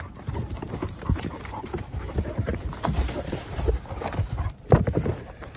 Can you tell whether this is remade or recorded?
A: remade